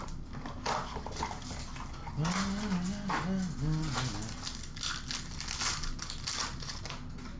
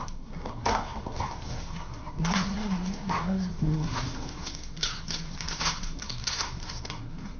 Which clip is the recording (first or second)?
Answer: first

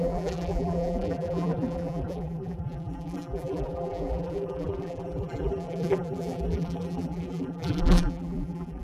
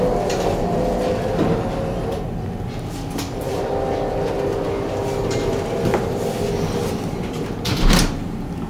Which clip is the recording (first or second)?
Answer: second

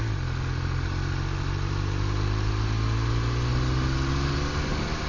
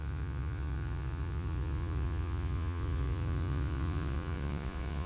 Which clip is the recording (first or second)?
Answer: first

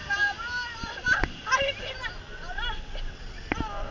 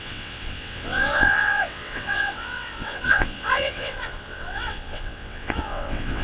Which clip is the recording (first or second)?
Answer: first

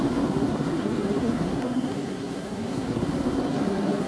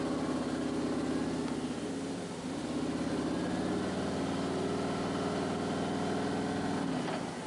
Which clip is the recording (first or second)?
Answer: second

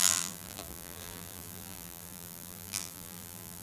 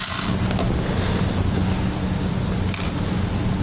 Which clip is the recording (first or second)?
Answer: second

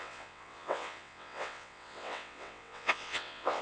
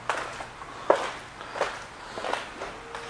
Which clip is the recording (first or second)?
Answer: second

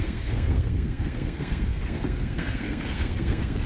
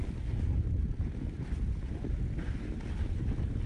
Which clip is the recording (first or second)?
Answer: second